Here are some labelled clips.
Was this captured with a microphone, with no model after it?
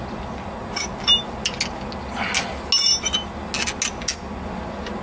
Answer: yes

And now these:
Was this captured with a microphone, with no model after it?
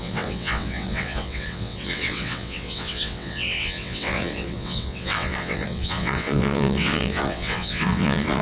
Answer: no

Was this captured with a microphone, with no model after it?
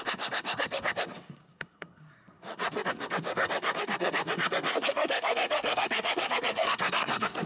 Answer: no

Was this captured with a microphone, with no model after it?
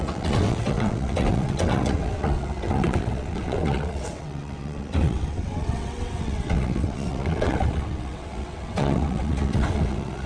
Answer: no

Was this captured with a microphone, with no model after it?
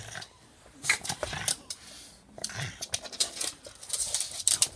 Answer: yes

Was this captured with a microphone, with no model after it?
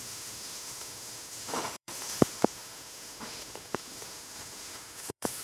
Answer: no